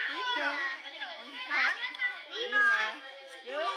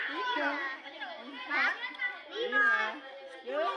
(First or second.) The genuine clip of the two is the second